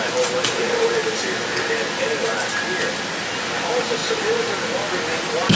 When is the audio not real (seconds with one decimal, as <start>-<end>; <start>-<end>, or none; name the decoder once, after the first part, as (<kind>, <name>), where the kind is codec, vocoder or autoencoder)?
none